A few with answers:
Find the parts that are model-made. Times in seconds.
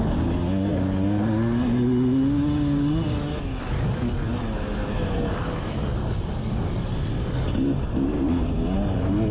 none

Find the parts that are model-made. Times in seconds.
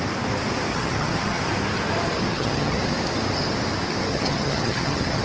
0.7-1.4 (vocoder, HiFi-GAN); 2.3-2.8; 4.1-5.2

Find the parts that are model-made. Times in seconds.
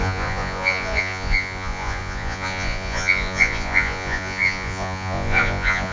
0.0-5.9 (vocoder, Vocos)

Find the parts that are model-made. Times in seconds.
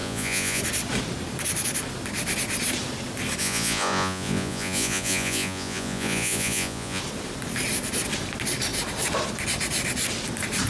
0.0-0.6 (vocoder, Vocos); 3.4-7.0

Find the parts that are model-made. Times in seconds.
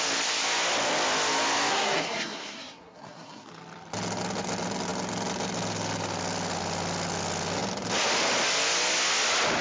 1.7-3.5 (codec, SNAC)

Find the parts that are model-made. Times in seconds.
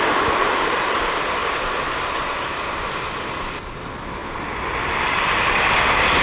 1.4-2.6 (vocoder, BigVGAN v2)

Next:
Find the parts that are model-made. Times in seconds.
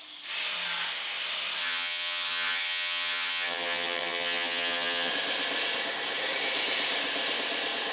1.6-5.1 (vocoder, HiFi-GAN)